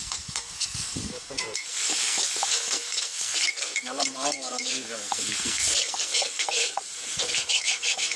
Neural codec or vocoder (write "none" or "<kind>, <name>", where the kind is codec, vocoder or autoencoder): codec, SNAC